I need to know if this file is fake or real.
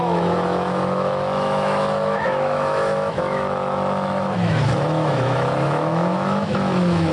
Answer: fake